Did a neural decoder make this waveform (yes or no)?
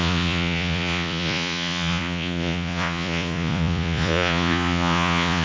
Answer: yes